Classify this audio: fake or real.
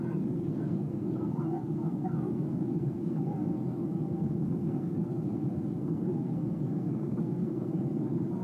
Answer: fake